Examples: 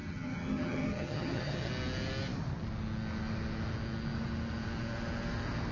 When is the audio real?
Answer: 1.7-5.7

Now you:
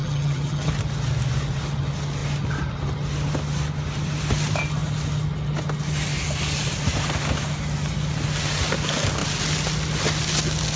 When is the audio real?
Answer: 0.7-10.8

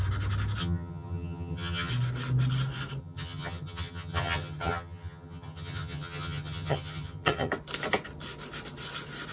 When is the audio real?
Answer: 0.0-0.6; 1.9-3.0; 7.5-9.3

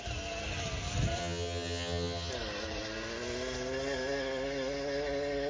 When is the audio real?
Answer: 0.0-1.2; 2.3-5.5

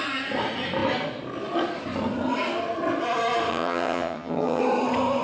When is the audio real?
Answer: 0.0-3.5; 4.6-5.2

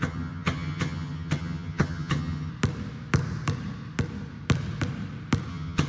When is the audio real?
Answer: 2.5-5.5

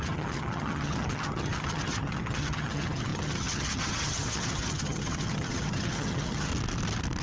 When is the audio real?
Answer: 6.5-7.2

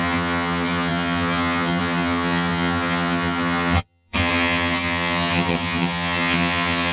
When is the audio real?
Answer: none